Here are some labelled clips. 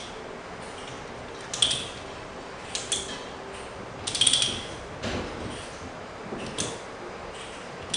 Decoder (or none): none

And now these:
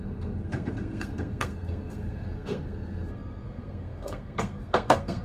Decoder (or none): codec, SNAC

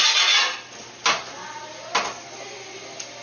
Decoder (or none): none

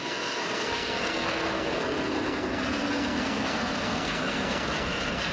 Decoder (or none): codec, SNAC